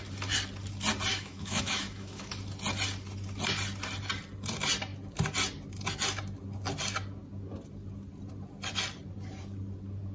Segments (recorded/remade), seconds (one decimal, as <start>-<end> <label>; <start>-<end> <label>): 0.0-1.1 recorded; 1.1-2.3 remade; 2.3-10.1 recorded